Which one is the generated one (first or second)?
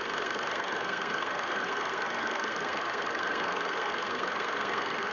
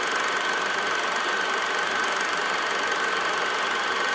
first